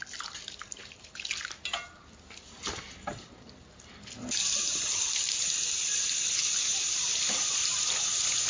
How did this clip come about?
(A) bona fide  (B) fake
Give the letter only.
A